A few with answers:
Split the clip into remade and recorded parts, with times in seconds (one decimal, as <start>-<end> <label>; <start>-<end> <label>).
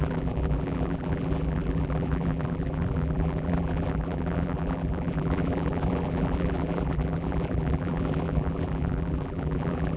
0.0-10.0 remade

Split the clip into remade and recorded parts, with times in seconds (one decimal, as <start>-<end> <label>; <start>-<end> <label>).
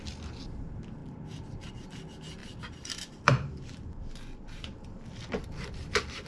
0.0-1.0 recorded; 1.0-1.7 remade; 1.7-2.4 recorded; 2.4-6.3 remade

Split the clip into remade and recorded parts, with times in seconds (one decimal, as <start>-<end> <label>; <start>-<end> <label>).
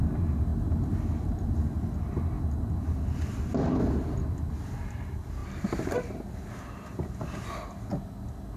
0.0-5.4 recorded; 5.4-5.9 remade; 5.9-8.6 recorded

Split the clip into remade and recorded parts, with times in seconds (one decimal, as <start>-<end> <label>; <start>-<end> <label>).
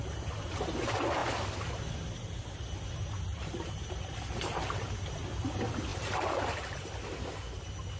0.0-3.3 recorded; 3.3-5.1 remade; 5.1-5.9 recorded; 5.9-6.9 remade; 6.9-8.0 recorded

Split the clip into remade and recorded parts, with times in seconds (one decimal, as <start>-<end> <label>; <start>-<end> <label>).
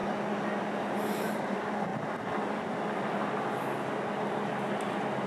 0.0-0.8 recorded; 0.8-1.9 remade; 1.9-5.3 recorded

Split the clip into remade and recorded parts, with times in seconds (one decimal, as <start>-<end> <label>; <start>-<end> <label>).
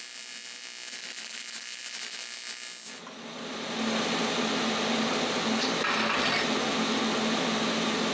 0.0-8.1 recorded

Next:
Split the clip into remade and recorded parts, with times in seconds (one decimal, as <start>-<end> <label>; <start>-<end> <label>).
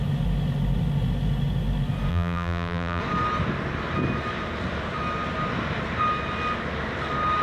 0.0-2.1 recorded; 2.1-3.0 remade; 3.0-7.4 recorded